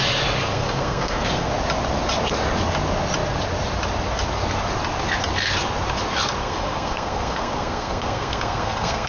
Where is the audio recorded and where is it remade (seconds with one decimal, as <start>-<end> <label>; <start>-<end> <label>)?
0.0-0.5 recorded; 0.5-1.5 remade; 1.5-6.4 recorded; 6.4-9.1 remade